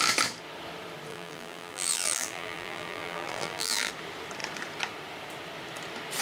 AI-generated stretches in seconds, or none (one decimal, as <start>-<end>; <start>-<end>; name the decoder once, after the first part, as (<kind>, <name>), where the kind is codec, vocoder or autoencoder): 1.1-3.9 (vocoder, BigVGAN v2)